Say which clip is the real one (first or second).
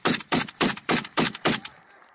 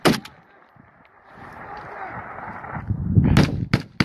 second